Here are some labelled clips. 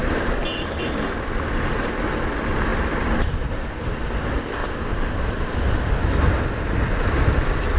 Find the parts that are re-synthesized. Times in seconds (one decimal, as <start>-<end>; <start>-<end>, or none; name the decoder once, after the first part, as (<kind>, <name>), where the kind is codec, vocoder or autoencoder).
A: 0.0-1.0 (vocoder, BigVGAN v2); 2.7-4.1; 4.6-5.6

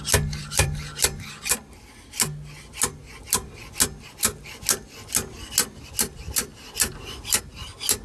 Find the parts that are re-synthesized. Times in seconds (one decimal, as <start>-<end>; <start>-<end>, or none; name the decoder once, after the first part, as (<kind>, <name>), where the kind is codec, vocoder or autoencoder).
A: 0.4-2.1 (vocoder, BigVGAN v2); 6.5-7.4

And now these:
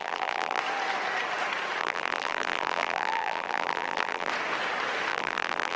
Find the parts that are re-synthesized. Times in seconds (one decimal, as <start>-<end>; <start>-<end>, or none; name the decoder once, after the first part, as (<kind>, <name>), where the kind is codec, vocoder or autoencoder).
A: 0.0-0.6 (vocoder, BigVGAN v2); 1.8-4.3; 5.1-5.8

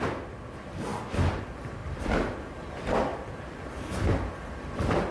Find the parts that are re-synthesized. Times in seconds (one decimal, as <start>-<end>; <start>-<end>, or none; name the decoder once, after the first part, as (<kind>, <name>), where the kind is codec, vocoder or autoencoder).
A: 0.9-1.4 (vocoder, BigVGAN v2); 1.8-2.7; 3.1-5.1

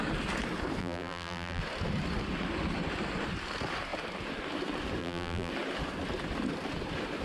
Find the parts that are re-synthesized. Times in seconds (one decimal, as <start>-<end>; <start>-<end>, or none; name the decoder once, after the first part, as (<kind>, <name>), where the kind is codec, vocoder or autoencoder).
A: 0.8-1.6 (vocoder, BigVGAN v2); 5.0-5.5